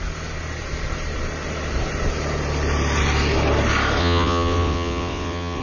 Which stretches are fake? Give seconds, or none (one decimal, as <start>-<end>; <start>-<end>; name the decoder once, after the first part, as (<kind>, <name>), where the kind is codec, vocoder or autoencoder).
4.0-5.6 (vocoder, WaveNeXt)